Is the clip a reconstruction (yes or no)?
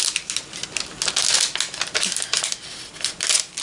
no